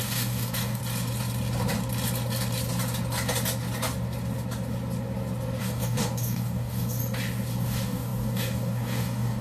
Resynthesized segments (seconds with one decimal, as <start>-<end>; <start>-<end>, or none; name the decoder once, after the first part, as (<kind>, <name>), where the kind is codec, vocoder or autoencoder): 0.0-0.8 (codec, DAC); 5.6-7.0; 7.6-9.4